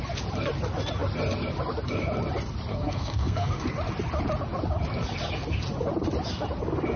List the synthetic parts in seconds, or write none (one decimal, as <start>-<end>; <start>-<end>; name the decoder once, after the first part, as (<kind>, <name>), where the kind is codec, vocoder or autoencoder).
2.7-3.7 (codec, SNAC)